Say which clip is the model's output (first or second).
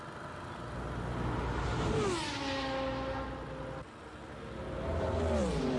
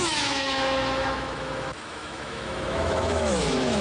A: second